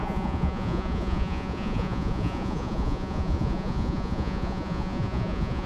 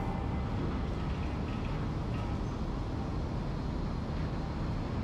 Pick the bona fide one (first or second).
second